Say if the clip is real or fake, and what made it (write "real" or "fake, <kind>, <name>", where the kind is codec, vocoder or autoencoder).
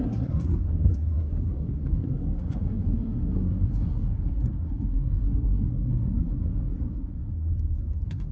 fake, codec, SNAC